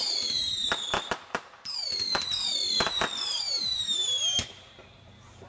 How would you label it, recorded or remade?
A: remade